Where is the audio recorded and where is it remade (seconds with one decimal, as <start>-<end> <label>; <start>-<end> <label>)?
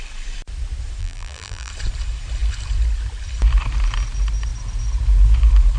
0.0-1.0 recorded; 1.0-1.7 remade; 1.7-5.8 recorded